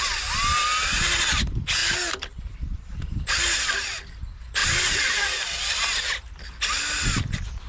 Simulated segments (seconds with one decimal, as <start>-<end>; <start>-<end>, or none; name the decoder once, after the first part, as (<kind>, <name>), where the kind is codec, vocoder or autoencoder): 1.8-3.2 (vocoder, BigVGAN v2); 4.6-5.1